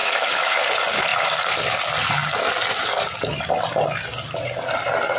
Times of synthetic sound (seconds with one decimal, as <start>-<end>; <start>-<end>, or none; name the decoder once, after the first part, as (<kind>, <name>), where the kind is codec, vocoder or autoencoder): 0.0-0.6 (autoencoder, DAC-VAE)